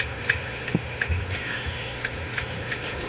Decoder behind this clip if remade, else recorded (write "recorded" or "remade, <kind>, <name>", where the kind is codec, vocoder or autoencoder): remade, autoencoder, DAC-VAE